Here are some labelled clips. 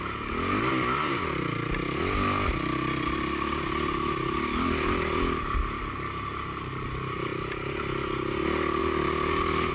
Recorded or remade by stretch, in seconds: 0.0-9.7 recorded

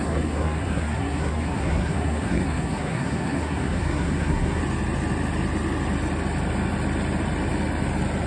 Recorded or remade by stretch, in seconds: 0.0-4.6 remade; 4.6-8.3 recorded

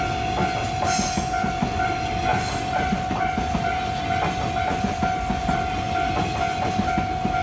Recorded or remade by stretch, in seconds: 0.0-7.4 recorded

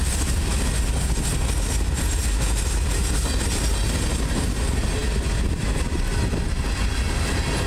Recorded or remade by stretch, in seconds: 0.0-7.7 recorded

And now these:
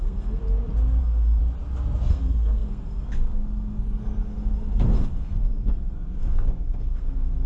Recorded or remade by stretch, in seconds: 0.0-0.4 remade; 0.4-1.0 recorded; 1.0-1.4 remade; 1.4-2.1 recorded; 2.1-7.5 remade

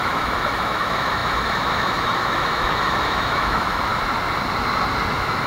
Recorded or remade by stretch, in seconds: 0.0-3.9 remade; 3.9-5.1 recorded; 5.1-5.5 remade

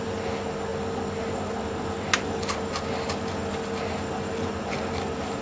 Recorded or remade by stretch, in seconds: 0.0-5.4 recorded